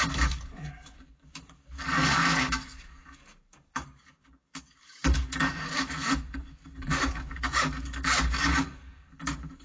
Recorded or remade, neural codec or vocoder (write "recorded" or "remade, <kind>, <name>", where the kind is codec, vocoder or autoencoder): remade, codec, DAC